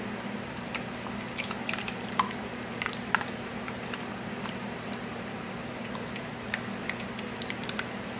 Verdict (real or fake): fake